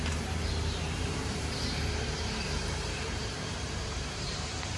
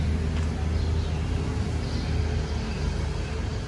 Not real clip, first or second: first